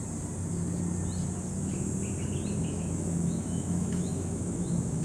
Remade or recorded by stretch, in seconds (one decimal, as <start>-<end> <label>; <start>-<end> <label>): 0.0-2.6 recorded; 2.6-5.0 remade